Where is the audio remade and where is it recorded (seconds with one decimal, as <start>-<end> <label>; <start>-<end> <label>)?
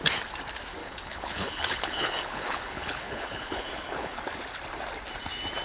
0.0-0.8 recorded; 0.8-4.2 remade; 4.2-5.6 recorded